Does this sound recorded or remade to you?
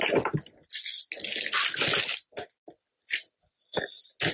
recorded